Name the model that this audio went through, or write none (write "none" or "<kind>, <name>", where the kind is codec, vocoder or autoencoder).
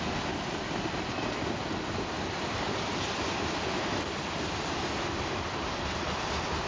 none